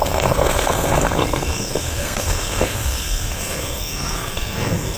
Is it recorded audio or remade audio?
remade